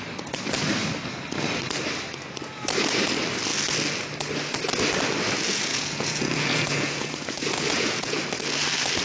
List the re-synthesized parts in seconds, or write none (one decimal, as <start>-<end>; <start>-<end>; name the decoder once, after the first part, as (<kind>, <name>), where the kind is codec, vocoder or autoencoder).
5.7-8.2 (vocoder, Vocos)